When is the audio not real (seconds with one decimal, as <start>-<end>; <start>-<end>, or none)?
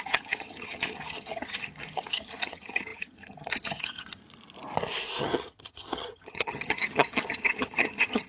0.0-4.2; 5.2-8.3